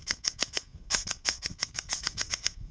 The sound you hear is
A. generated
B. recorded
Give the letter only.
A